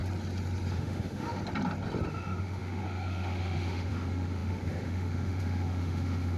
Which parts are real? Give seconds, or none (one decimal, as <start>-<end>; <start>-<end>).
0.0-0.7; 1.4-2.1